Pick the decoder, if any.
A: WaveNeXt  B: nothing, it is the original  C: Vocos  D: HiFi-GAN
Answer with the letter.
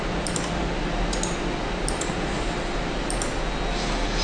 B